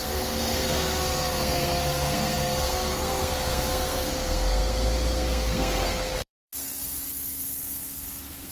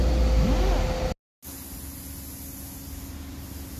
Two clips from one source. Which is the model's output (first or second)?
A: first